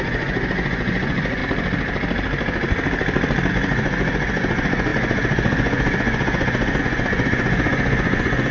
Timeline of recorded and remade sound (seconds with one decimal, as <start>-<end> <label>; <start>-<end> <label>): 0.0-1.4 remade; 1.4-3.5 recorded; 3.5-8.5 remade